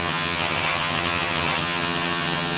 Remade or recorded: remade